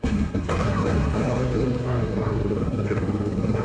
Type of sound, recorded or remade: remade